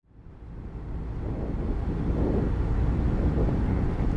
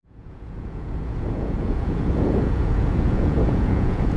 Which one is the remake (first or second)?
second